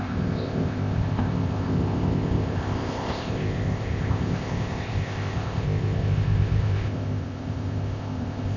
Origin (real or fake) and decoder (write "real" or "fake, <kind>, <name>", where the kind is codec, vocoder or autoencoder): fake, codec, ZipCodec